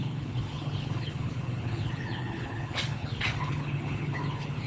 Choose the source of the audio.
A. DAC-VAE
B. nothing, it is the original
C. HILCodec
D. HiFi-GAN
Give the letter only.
C